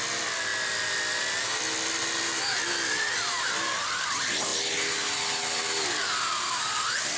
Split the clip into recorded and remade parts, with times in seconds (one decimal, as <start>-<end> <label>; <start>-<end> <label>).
0.0-7.2 recorded